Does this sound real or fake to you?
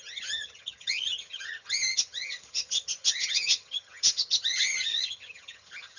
fake